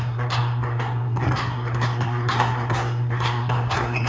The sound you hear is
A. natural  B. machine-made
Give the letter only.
B